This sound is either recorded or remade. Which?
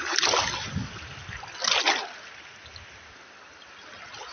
recorded